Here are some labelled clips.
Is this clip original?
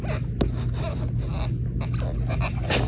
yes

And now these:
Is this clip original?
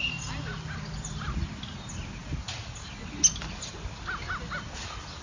yes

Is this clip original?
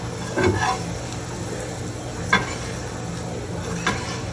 yes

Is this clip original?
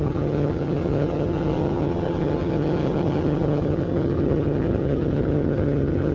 no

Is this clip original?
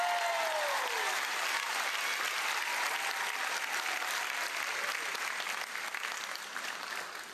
yes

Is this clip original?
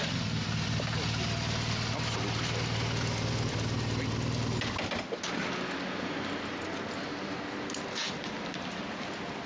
yes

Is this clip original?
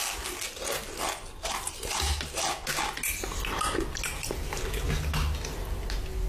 yes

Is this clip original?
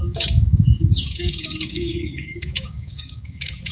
no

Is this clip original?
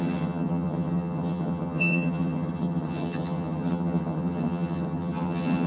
no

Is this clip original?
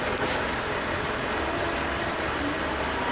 yes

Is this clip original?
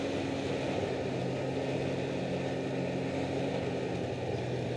yes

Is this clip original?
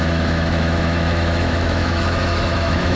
no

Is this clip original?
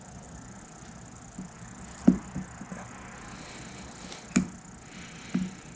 yes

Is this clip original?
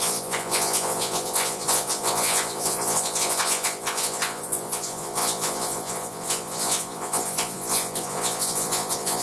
no